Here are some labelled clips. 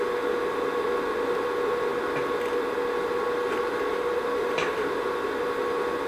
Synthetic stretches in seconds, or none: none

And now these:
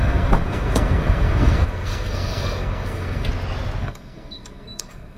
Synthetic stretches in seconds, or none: 0.0-3.3 (codec, SNAC); 3.8-5.2

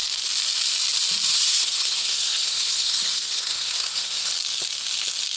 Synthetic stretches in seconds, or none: 1.3-4.3 (codec, SNAC)

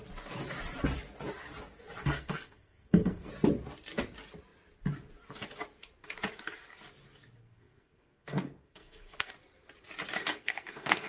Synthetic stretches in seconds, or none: 2.0-3.3 (codec, SNAC); 7.4-9.3; 10.2-11.1

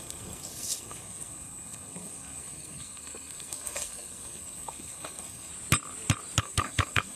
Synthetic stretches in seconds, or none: 0.0-5.5 (codec, SNAC); 6.4-7.2

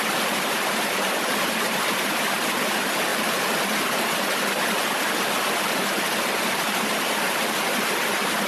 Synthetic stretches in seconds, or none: none